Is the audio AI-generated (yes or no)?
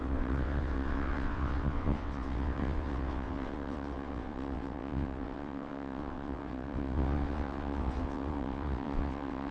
yes